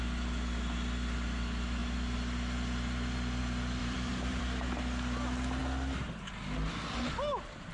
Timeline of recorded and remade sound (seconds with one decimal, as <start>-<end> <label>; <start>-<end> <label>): 0.0-3.8 recorded; 3.8-4.4 remade; 4.4-7.7 recorded